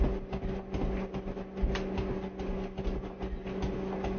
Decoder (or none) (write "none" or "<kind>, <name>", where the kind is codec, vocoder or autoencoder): none